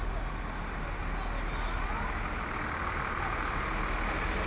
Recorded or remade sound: recorded